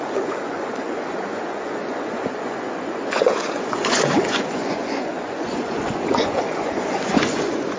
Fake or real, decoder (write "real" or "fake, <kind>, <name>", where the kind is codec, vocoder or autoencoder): fake, vocoder, Vocos